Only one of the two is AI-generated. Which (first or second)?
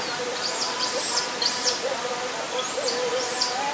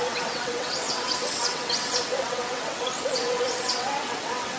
second